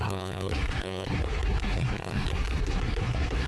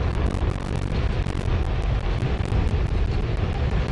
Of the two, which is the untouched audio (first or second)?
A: second